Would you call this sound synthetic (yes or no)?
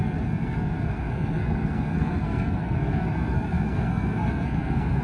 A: yes